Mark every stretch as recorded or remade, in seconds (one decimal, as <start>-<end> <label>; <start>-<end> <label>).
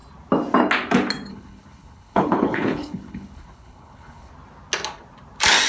0.0-1.3 recorded; 1.3-4.3 remade; 4.3-5.7 recorded